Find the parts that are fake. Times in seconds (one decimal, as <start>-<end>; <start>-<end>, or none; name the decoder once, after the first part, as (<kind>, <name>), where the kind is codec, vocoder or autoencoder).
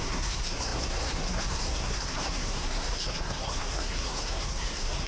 0.0-5.1 (codec, SNAC)